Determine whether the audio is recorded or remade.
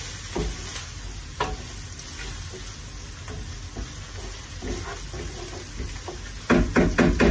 recorded